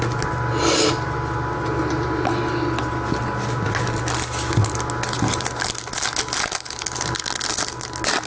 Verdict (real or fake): real